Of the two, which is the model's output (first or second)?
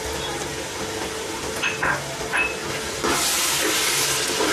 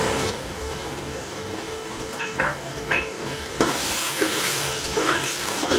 second